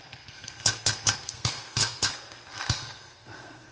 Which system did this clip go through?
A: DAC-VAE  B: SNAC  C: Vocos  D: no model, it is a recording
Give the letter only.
B